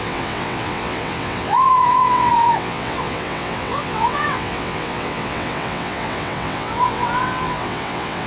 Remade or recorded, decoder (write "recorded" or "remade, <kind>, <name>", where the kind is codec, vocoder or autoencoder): remade, vocoder, WaveNeXt